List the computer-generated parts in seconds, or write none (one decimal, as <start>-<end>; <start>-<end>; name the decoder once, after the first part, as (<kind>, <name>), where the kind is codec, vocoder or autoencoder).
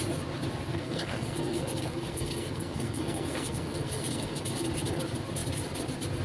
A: 0.7-4.4 (codec, SNAC)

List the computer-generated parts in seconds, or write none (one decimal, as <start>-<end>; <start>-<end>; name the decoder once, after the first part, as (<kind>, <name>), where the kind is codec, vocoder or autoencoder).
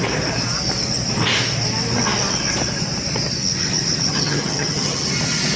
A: 4.1-5.1 (vocoder, HiFi-GAN)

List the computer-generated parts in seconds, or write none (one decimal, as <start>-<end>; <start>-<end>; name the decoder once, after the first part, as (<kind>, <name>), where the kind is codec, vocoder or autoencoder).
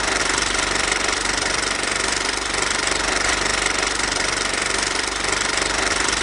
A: 0.0-6.2 (vocoder, BigVGAN v2)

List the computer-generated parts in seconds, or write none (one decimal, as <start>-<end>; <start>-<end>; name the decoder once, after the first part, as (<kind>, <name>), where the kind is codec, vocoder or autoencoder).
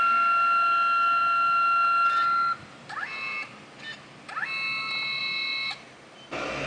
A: none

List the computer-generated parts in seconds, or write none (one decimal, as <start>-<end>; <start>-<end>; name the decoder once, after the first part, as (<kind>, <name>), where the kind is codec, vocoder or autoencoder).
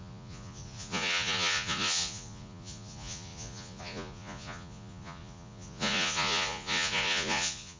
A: 0.0-7.8 (vocoder, Vocos)